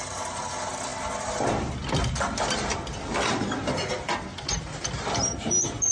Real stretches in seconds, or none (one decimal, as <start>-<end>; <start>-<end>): 0.0-5.9